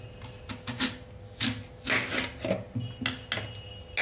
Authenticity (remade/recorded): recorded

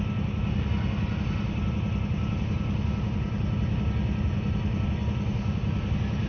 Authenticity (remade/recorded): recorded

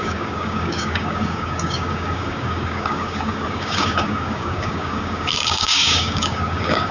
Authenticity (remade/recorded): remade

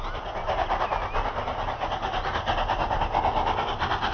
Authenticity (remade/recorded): recorded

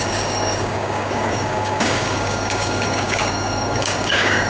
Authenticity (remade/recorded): remade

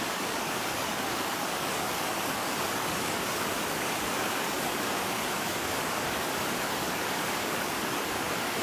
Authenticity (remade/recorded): remade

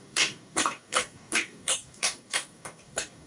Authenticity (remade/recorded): remade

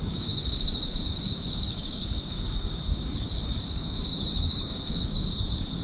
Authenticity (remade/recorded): remade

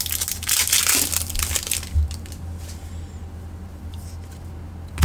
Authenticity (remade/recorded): recorded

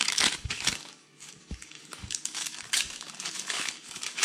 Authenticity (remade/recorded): remade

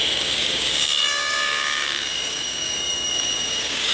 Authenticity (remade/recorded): remade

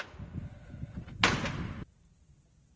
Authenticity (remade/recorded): recorded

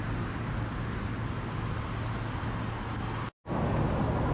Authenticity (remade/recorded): recorded